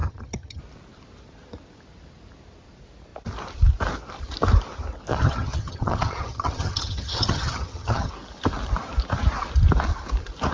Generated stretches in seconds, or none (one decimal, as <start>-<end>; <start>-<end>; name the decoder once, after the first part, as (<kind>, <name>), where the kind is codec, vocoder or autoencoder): 0.0-0.6 (vocoder, HiFi-GAN); 5.1-8.1